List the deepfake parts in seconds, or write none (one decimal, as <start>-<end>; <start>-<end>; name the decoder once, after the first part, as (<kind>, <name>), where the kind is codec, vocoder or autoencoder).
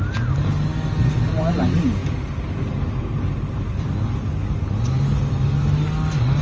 none